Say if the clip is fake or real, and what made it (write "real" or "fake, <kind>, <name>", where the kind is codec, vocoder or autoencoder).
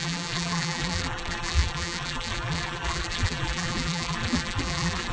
fake, vocoder, BigVGAN v2